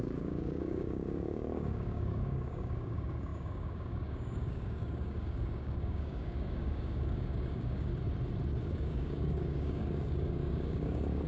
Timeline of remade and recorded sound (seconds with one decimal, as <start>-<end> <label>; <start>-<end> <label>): 0.0-7.9 remade; 7.9-8.6 recorded; 8.6-11.3 remade